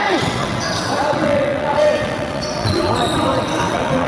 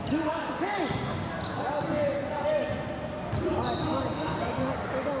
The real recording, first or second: second